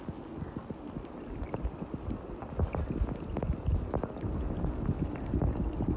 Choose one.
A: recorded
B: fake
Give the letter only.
A